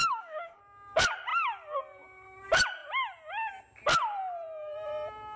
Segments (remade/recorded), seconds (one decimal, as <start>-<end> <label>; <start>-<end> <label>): 0.0-0.6 remade; 0.6-5.4 recorded